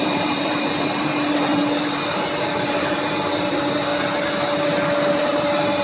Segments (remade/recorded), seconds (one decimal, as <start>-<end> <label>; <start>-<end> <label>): 0.0-3.9 remade; 3.9-5.1 recorded; 5.1-5.8 remade